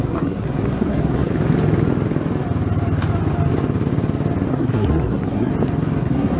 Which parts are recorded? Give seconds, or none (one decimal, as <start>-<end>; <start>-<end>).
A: 1.3-4.5; 5.5-6.0

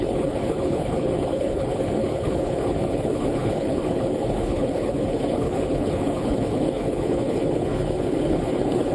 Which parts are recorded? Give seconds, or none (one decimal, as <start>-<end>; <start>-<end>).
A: none

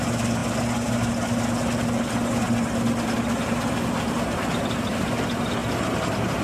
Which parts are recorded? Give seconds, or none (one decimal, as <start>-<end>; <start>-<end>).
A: 0.0-6.4

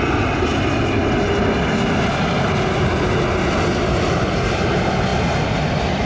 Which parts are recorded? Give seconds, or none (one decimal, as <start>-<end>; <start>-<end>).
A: 0.0-6.1